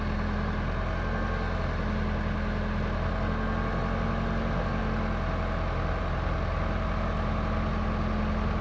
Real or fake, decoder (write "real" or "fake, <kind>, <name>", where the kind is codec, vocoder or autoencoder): real